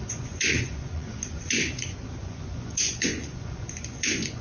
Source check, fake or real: fake